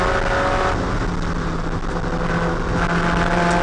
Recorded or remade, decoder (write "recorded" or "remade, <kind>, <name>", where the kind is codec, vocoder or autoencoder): recorded